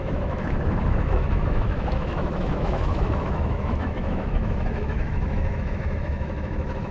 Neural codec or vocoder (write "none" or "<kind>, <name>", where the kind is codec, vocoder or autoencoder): autoencoder, DAC-VAE